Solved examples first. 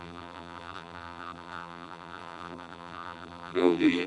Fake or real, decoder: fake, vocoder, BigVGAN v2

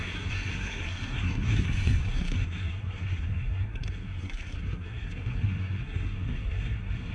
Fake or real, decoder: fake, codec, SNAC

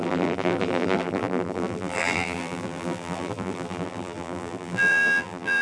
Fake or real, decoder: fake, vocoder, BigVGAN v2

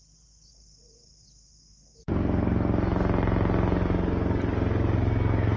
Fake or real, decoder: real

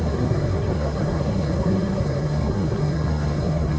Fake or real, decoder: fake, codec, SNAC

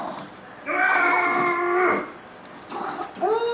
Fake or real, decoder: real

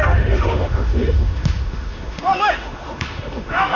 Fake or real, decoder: fake, autoencoder, DAC-VAE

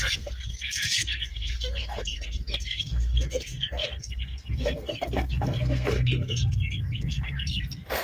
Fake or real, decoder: fake, codec, SNAC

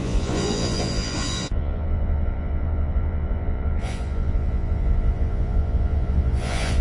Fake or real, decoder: fake, vocoder, Vocos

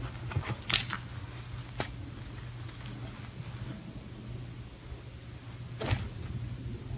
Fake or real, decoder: real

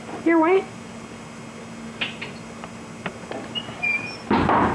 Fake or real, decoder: real